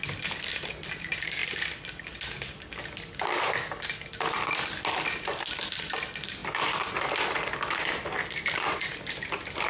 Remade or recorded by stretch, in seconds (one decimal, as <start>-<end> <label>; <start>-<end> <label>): 0.0-9.7 recorded